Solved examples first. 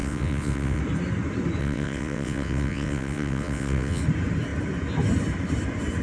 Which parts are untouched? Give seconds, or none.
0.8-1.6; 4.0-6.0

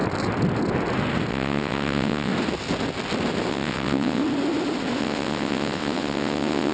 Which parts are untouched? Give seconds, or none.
0.0-1.3; 2.3-3.5; 4.2-5.0

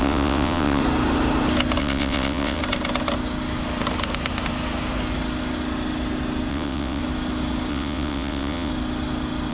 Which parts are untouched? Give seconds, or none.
0.8-1.8; 2.6-6.5; 7.0-7.7; 8.7-9.5

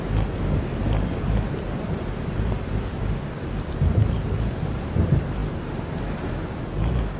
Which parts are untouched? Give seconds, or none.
0.0-7.2